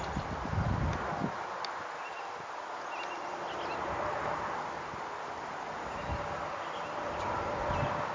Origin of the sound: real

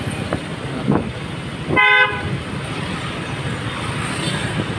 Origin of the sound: real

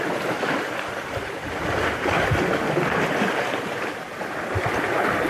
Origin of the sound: real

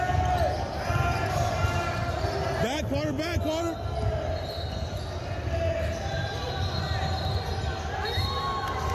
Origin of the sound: real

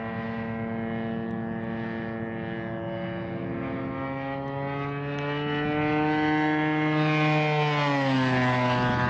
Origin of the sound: real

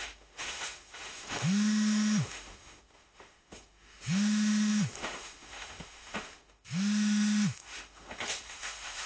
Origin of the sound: fake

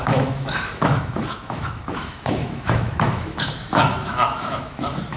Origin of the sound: fake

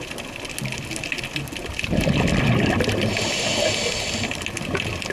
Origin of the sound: real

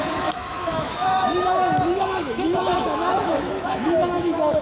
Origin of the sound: fake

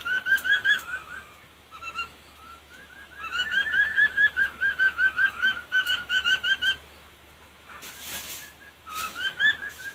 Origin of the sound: fake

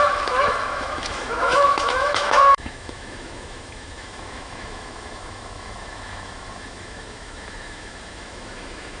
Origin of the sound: fake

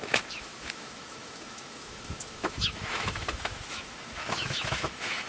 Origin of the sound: fake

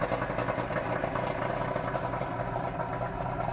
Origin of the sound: real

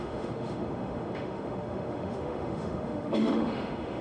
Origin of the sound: fake